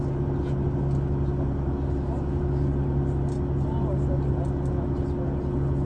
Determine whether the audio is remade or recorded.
recorded